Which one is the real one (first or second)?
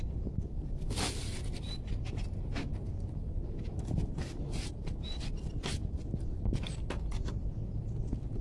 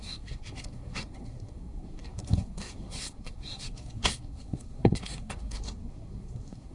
first